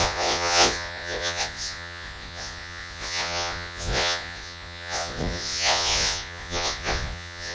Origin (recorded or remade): remade